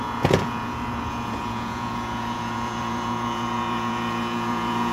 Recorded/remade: remade